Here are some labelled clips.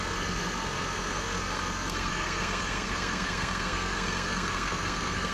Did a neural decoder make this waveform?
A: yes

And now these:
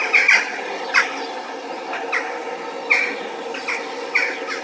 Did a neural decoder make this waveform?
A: no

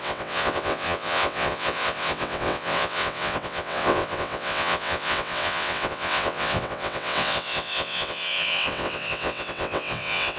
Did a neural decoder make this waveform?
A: yes